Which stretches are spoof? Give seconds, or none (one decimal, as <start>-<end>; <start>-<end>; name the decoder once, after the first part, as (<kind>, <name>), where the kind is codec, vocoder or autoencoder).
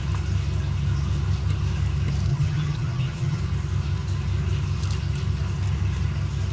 2.3-3.4 (vocoder, HiFi-GAN)